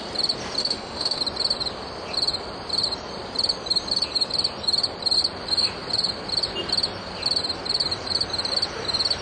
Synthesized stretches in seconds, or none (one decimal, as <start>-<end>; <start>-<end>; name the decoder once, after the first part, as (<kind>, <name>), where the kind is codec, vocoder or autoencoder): 0.6-1.2 (autoencoder, DAC-VAE)